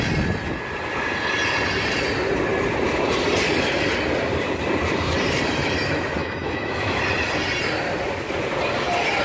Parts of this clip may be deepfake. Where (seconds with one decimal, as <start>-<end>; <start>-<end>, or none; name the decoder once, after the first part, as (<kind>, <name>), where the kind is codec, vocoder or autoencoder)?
6.2-7.0 (autoencoder, DAC-VAE)